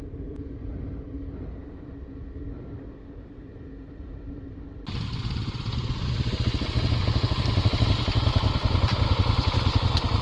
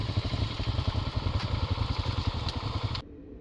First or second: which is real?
first